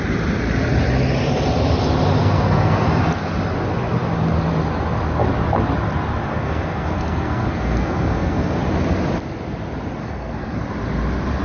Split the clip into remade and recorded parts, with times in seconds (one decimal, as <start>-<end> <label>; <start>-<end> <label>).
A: 0.0-2.2 recorded; 2.2-2.8 remade; 2.8-6.3 recorded; 6.3-8.6 remade; 8.6-10.0 recorded; 10.0-10.6 remade; 10.6-11.4 recorded